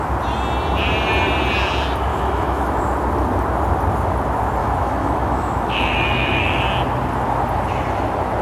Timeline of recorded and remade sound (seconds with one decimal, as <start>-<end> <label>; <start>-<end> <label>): 0.0-2.1 recorded; 2.1-2.8 remade; 2.8-4.6 recorded; 4.6-6.6 remade; 6.6-8.4 recorded